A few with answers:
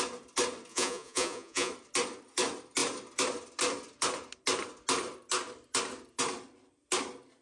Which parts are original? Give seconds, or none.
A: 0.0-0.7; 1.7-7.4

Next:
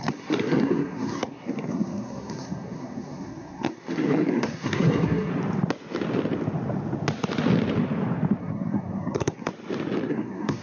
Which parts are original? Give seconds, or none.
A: 5.3-8.4; 9.5-10.1

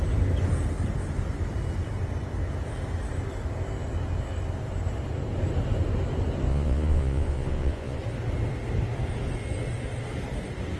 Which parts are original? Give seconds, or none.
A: 0.0-6.5; 8.0-10.8